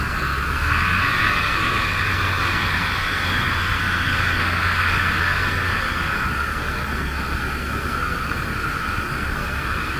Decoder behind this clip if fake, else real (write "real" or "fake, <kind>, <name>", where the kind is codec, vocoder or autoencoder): fake, codec, SNAC